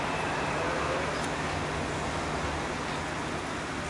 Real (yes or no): yes